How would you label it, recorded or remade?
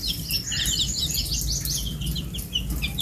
recorded